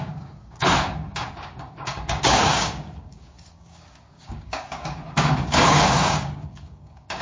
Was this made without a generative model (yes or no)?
no